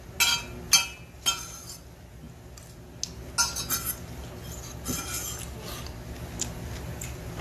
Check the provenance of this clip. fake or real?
real